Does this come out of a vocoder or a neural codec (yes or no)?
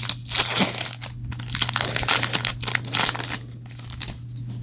no